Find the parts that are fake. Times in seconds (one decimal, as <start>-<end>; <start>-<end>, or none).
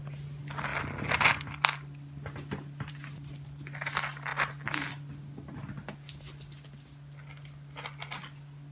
none